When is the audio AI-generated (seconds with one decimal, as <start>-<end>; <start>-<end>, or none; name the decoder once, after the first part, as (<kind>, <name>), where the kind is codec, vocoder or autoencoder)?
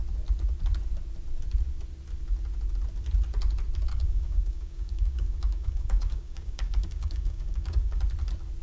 3.9-8.0 (codec, DAC)